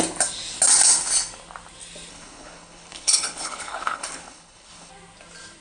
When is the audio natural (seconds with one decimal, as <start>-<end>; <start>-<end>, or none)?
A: 0.0-2.1; 4.9-5.6